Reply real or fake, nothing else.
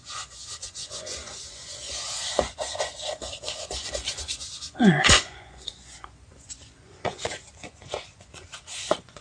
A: fake